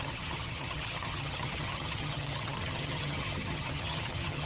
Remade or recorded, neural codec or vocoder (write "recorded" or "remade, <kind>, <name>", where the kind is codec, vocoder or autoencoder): remade, vocoder, HiFi-GAN